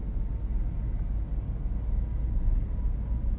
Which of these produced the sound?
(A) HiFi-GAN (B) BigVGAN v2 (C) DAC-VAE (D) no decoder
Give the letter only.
D